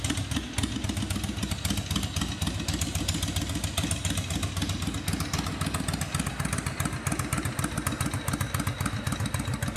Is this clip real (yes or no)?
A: yes